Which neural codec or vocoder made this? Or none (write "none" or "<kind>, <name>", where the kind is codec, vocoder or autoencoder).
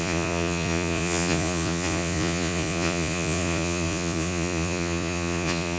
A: vocoder, Vocos